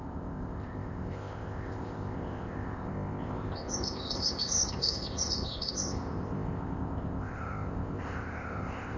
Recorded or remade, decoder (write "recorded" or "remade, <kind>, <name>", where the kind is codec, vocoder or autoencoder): remade, codec, ZipCodec